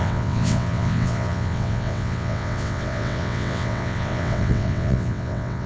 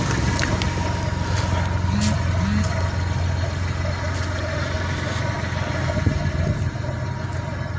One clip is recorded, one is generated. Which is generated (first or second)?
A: first